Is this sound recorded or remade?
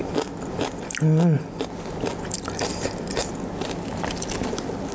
recorded